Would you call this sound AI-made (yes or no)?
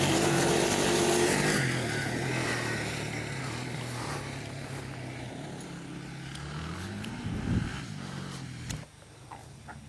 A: no